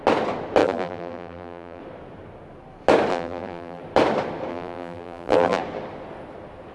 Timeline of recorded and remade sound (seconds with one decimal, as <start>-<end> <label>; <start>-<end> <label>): 0.0-0.6 recorded; 0.6-1.8 remade; 1.8-3.1 recorded; 3.1-3.8 remade; 3.8-4.5 recorded; 4.5-5.6 remade; 5.6-6.7 recorded